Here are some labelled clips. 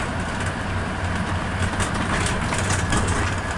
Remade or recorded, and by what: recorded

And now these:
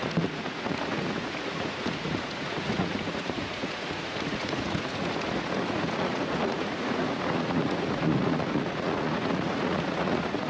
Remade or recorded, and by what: remade, vocoder, Vocos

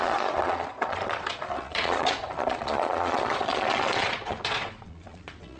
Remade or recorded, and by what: remade, vocoder, Vocos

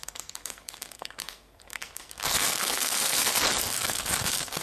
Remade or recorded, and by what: remade, codec, SNAC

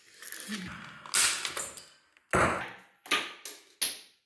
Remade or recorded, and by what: recorded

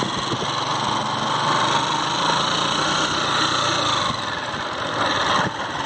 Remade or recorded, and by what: recorded